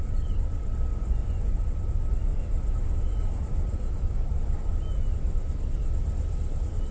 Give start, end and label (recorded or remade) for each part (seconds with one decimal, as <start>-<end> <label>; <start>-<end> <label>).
0.0-0.9 recorded; 0.9-1.5 remade; 1.5-6.9 recorded